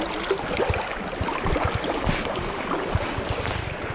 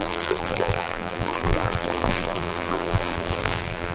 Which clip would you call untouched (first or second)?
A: first